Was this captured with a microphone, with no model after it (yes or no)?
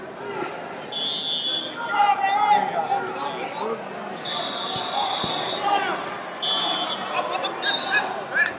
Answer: yes